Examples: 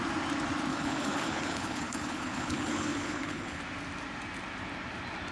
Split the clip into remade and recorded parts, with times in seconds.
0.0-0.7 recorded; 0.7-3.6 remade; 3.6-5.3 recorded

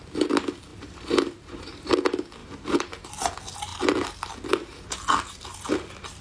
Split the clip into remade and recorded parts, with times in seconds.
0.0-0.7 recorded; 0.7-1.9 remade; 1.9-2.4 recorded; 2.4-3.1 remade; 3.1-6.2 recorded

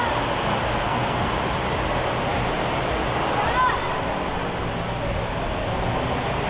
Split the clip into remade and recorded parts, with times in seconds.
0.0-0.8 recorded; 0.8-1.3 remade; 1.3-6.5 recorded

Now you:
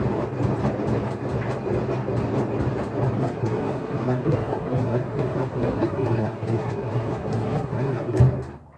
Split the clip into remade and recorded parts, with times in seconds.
0.0-3.2 recorded; 3.2-8.2 remade; 8.2-8.8 recorded